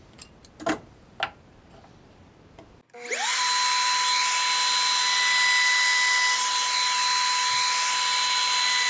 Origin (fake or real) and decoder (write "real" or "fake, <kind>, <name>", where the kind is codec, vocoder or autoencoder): real